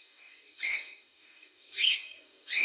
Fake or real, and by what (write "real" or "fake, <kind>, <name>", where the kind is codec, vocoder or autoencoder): fake, codec, DAC